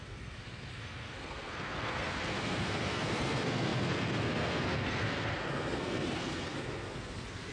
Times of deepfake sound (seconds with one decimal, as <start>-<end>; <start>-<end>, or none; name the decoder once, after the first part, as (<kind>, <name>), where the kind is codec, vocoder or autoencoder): 0.0-7.5 (codec, SNAC)